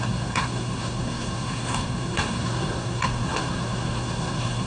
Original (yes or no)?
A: no